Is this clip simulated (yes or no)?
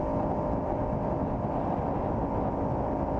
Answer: no